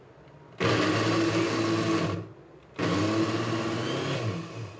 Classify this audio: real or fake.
real